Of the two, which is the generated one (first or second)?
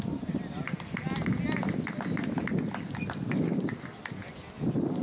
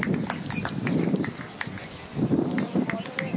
second